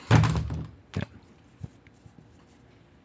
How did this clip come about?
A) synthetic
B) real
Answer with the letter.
B